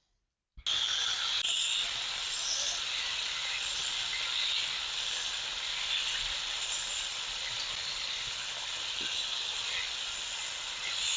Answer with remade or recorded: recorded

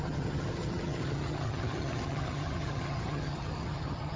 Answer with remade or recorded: remade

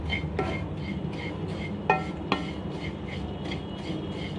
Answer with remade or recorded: recorded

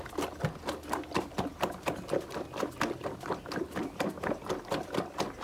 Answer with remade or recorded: recorded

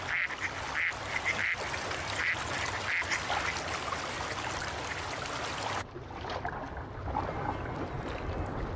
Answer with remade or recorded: recorded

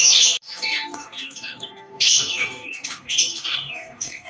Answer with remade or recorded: remade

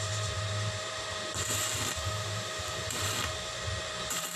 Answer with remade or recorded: remade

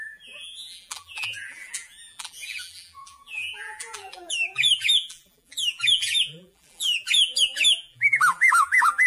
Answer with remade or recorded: remade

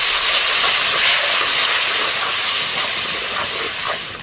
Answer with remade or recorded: recorded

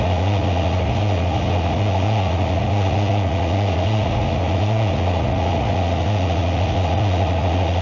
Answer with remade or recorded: remade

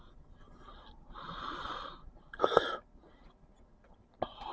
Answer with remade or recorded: recorded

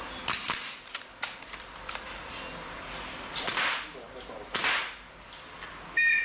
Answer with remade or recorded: recorded